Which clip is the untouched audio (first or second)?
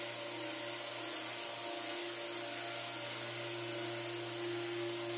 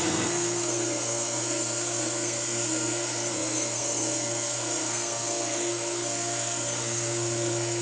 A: first